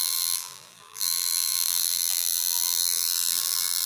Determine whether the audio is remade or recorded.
remade